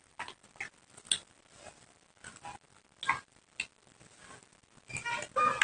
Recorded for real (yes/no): yes